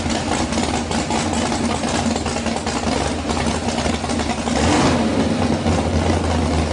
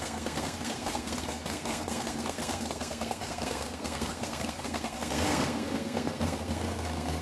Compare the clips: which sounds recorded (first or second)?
first